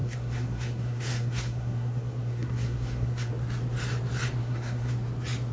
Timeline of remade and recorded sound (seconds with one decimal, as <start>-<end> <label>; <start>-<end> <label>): 0.0-3.3 remade; 3.3-4.4 recorded; 4.4-4.9 remade; 4.9-5.5 recorded